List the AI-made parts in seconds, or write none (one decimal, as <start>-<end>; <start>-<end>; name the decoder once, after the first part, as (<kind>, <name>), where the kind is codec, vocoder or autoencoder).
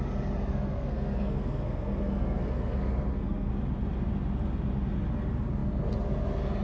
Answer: 0.5-3.5 (codec, SNAC)